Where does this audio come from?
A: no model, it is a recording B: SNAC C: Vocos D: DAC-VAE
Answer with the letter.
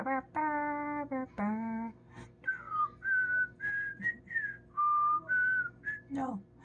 A